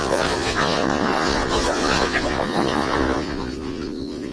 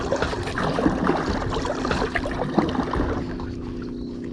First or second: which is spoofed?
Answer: first